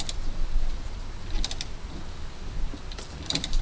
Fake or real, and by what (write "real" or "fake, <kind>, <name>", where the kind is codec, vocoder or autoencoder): real